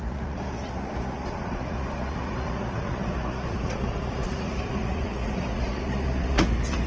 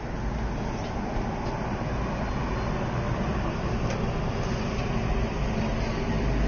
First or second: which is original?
second